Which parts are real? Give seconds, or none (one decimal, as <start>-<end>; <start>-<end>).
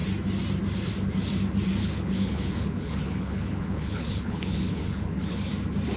0.0-1.8; 5.4-6.0